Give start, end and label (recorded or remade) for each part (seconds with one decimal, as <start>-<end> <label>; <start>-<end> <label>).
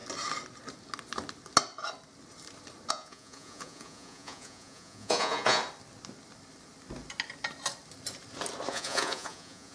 0.0-2.9 recorded; 2.9-5.6 remade; 5.6-8.7 recorded; 8.7-9.7 remade